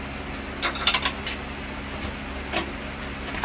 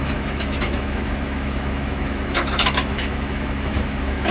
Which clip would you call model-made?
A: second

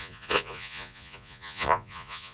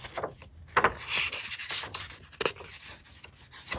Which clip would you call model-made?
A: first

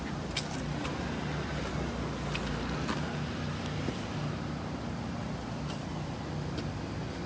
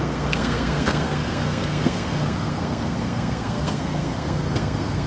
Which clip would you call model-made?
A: second